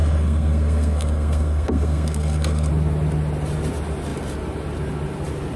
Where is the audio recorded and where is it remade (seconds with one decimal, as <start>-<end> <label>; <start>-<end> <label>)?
0.0-2.7 remade; 2.7-5.6 recorded